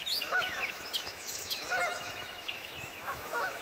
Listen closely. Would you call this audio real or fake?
fake